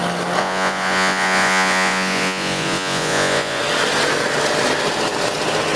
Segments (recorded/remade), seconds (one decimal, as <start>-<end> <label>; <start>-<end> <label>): 0.0-0.4 recorded; 0.4-3.6 remade; 3.6-5.8 recorded